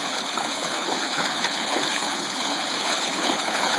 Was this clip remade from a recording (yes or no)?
yes